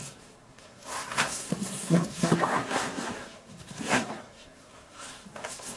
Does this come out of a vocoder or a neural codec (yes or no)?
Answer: yes